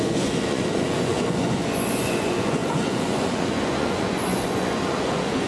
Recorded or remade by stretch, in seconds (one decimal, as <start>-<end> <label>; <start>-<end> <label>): 0.0-5.5 remade